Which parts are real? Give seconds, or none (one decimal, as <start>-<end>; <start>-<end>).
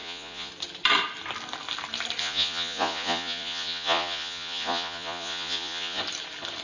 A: 0.5-2.2; 6.0-6.6